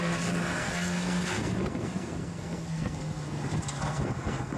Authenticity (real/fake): fake